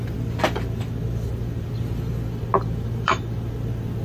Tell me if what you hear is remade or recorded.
remade